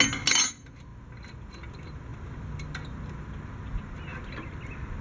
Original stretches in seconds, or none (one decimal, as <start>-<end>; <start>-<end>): 0.0-5.0